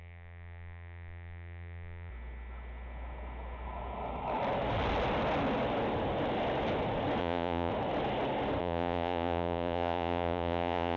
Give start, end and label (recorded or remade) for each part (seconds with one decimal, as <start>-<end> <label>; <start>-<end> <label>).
0.0-2.1 remade; 2.1-7.2 recorded; 7.2-7.7 remade; 7.7-8.6 recorded; 8.6-11.0 remade